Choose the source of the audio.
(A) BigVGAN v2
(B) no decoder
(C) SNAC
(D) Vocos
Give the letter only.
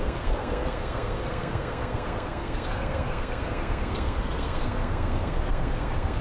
C